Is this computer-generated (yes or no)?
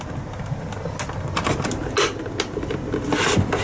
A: no